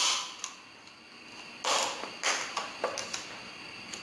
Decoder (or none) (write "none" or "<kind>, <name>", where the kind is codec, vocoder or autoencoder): none